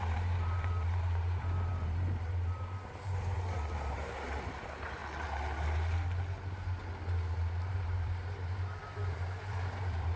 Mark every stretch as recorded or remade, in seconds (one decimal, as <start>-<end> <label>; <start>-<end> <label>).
0.0-5.0 remade; 5.0-7.7 recorded; 7.7-10.2 remade